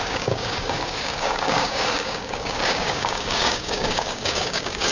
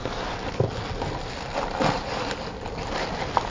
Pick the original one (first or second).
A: second